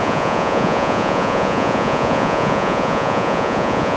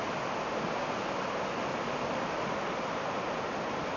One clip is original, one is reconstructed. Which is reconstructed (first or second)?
first